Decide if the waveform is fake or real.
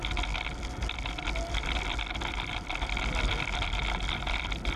real